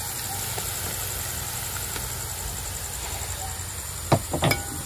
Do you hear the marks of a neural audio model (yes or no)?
no